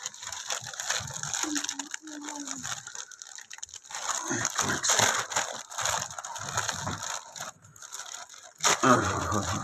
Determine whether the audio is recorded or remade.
recorded